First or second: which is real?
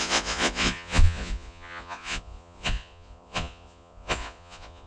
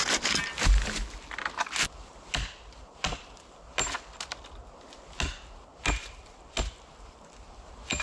second